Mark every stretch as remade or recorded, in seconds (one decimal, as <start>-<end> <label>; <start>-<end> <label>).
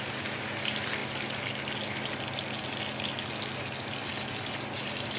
0.0-5.2 recorded